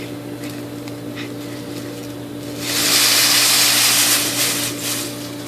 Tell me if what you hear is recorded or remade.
recorded